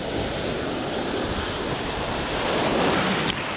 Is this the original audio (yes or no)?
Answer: yes